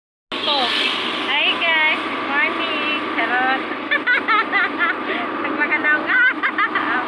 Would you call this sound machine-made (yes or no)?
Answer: no